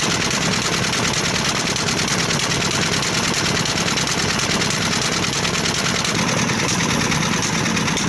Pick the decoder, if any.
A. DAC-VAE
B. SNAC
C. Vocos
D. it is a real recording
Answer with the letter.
D